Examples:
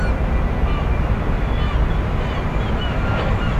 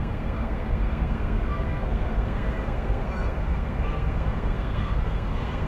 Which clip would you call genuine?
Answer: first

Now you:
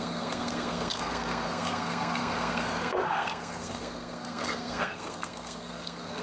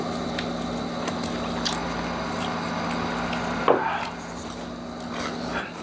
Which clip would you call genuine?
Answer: second